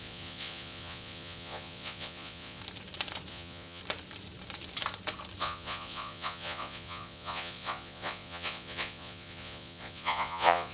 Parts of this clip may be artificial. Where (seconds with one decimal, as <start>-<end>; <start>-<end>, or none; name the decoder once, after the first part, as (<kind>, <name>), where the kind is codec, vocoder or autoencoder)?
0.0-2.6 (vocoder, Vocos); 3.3-3.8; 5.4-10.7